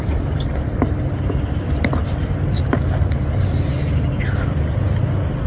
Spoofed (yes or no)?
no